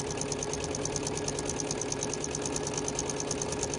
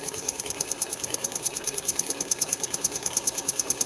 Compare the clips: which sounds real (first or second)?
first